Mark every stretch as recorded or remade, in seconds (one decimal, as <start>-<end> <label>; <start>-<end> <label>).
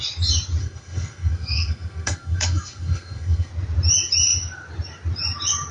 0.0-0.6 recorded; 0.6-3.5 remade; 3.5-5.7 recorded